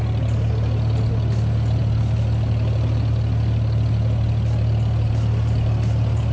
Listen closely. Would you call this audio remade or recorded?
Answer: recorded